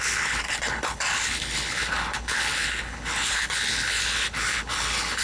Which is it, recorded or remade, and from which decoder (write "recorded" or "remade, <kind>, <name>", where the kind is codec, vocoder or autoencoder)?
remade, codec, HILCodec